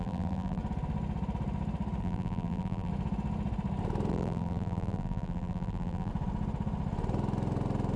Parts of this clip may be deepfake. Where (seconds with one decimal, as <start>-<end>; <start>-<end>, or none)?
0.0-0.6; 2.0-2.9; 4.1-6.1